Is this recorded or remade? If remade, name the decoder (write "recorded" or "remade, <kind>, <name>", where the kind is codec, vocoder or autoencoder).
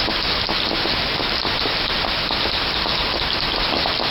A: recorded